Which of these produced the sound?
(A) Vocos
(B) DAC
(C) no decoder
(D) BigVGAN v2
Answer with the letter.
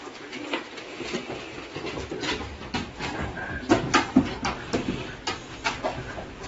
C